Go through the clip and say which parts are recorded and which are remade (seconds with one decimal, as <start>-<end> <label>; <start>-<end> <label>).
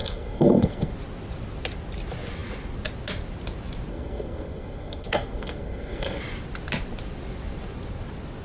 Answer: 0.0-0.9 remade; 0.9-3.9 recorded; 3.9-6.2 remade; 6.2-8.4 recorded